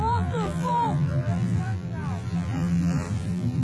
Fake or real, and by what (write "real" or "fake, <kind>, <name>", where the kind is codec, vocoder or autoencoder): fake, vocoder, BigVGAN v2